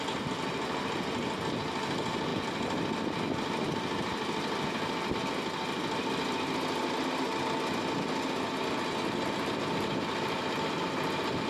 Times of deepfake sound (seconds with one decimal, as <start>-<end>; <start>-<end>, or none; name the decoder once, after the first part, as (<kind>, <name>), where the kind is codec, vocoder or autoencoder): none